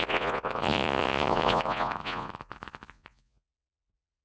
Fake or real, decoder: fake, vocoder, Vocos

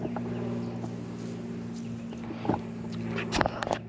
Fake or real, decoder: real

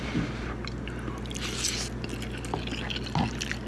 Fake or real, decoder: real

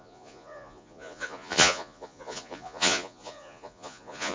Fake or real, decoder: fake, vocoder, Vocos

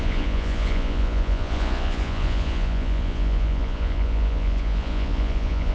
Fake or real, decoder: fake, vocoder, Vocos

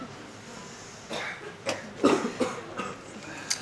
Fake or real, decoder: real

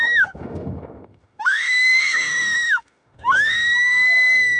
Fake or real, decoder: fake, autoencoder, DAC-VAE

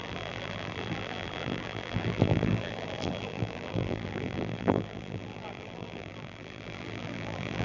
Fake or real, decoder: fake, vocoder, BigVGAN v2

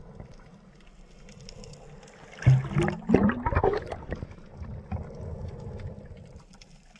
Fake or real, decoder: real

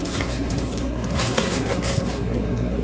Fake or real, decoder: fake, codec, SNAC